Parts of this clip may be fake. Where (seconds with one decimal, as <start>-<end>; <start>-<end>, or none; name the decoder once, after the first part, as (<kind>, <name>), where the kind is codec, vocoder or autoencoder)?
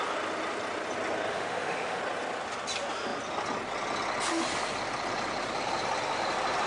1.3-2.0 (autoencoder, DAC-VAE)